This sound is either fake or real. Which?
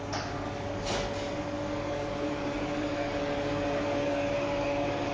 fake